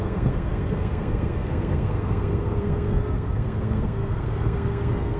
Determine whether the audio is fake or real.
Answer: fake